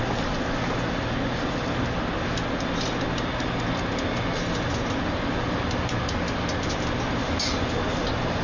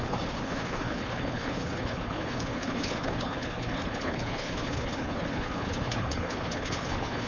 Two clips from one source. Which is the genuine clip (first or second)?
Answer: first